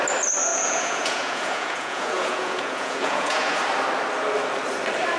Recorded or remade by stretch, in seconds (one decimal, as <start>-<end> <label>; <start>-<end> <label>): 0.0-0.5 recorded; 0.5-3.6 remade; 3.6-5.2 recorded